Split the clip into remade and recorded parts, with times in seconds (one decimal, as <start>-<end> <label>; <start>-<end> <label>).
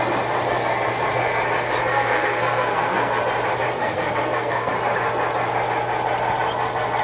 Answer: 0.0-1.9 recorded; 1.9-3.2 remade; 3.2-3.8 recorded; 3.8-4.7 remade; 4.7-7.0 recorded